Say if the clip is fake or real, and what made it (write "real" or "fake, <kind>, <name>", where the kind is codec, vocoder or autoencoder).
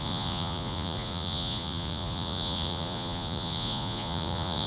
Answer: fake, vocoder, Vocos